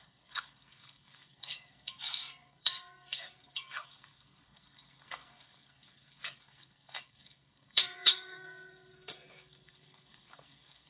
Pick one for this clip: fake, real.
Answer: fake